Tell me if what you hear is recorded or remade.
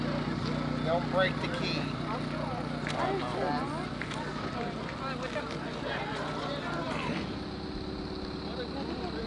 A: recorded